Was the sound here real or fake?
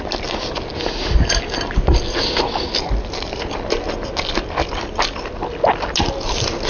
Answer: real